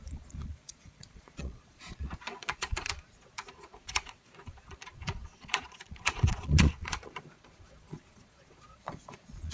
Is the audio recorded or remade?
remade